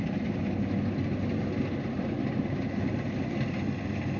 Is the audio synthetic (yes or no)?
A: no